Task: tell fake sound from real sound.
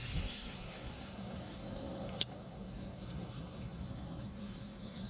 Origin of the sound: fake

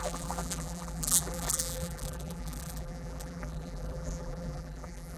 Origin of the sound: fake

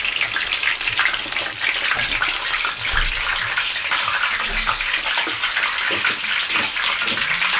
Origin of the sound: real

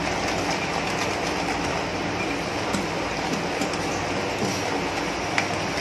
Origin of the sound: real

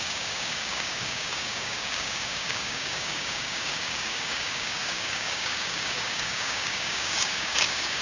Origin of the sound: fake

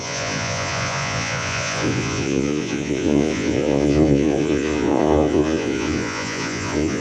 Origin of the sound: fake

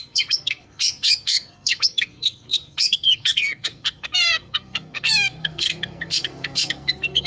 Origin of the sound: fake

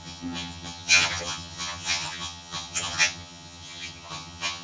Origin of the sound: fake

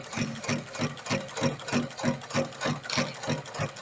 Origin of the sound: real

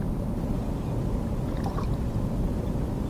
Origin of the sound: real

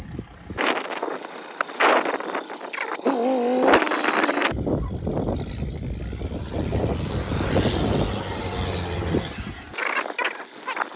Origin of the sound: real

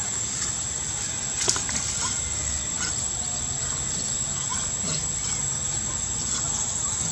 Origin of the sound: real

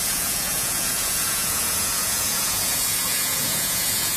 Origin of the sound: fake